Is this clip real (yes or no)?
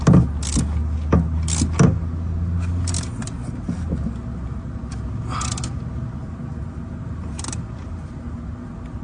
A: yes